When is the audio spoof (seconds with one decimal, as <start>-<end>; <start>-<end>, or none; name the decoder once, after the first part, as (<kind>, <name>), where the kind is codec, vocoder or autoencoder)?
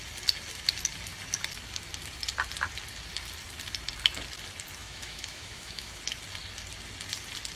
4.8-6.0 (autoencoder, DAC-VAE)